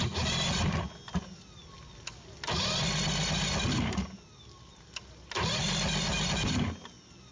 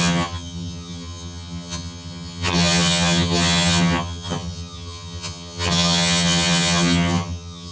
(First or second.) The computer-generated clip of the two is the second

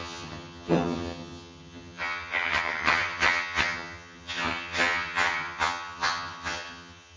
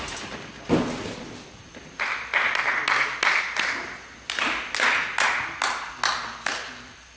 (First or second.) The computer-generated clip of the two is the first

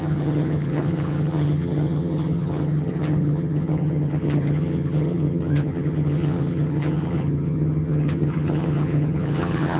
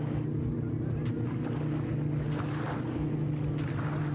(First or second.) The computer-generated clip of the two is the first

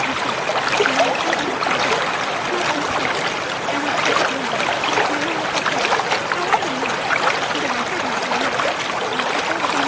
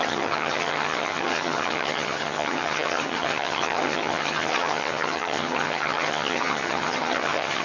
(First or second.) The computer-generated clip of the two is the second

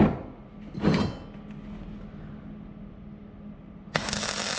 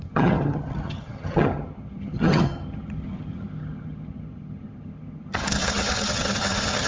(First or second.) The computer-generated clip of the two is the second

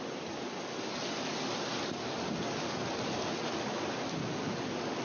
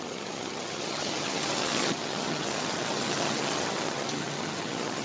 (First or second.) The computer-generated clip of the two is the second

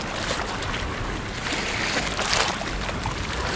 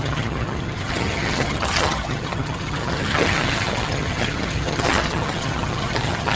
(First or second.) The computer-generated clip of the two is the second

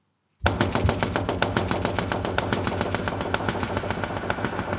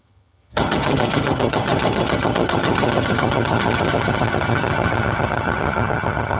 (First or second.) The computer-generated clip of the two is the second